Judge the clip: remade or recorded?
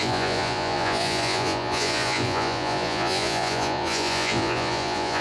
remade